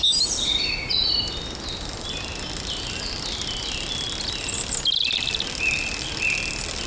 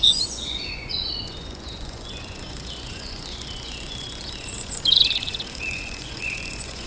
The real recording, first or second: first